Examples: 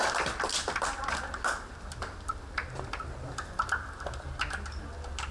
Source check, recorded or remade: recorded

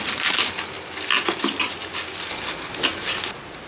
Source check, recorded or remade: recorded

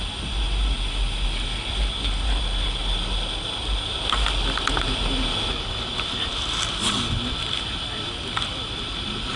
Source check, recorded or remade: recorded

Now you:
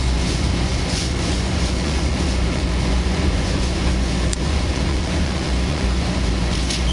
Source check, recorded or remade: remade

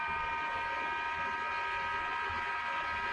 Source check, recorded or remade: recorded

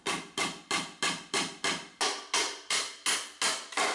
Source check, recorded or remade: recorded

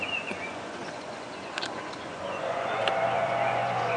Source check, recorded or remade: remade